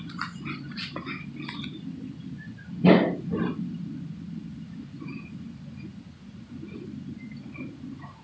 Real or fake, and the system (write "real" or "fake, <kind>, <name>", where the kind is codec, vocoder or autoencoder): real